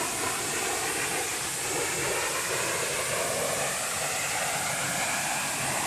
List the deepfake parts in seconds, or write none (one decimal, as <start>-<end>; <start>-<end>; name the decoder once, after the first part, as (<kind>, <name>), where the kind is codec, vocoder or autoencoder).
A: none